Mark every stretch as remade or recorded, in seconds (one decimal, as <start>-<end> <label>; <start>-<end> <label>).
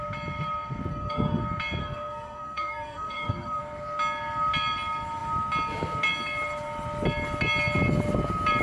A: 0.0-0.9 recorded; 0.9-1.4 remade; 1.4-1.8 recorded; 1.8-3.6 remade; 3.6-8.6 recorded